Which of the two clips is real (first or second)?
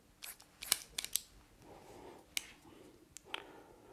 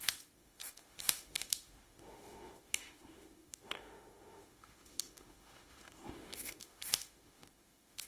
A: first